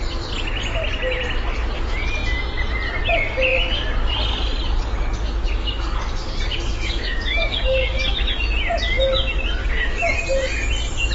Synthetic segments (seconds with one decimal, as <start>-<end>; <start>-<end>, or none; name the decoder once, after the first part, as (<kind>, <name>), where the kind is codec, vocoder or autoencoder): 5.6-8.1 (codec, DAC); 9.6-10.2